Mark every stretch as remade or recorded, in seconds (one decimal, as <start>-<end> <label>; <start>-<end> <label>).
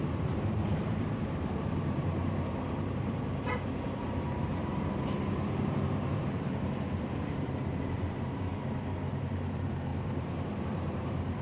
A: 0.0-8.5 remade; 8.5-9.1 recorded; 9.1-11.4 remade